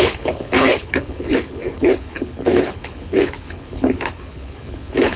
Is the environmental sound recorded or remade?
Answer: remade